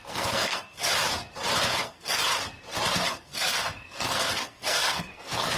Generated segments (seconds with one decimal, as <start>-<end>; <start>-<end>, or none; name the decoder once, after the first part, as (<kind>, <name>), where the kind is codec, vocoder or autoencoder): 0.0-0.8 (codec, SNAC); 1.8-2.3; 3.1-5.6